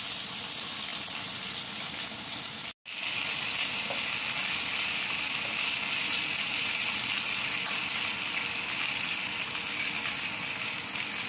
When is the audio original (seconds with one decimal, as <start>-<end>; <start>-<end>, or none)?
0.0-11.3